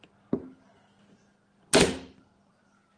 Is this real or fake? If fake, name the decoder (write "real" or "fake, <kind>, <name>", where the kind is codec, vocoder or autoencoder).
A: real